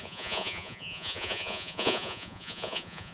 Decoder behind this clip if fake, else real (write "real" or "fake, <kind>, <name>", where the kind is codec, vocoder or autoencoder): fake, vocoder, Vocos